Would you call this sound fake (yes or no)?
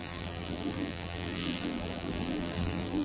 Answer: yes